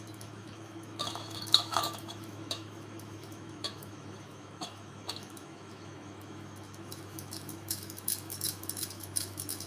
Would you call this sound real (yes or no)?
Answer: no